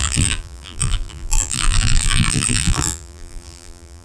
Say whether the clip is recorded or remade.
remade